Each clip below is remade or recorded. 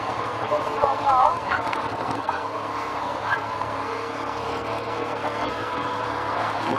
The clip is remade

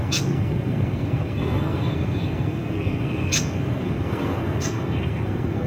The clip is remade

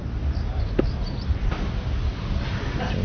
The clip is recorded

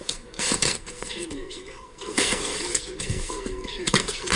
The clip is remade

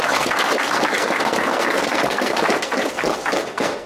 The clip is remade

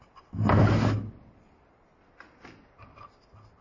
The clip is recorded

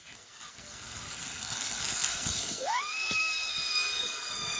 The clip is remade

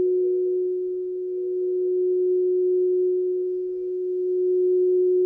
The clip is remade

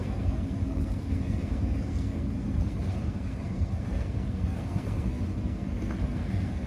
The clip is remade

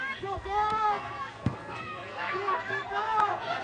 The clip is remade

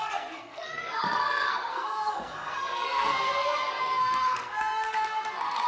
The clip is remade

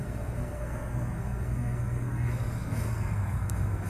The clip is remade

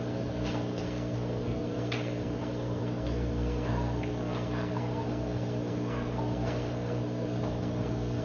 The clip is remade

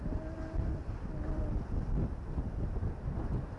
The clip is recorded